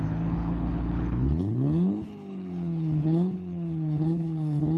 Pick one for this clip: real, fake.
fake